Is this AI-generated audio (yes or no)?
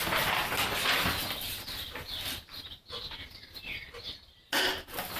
no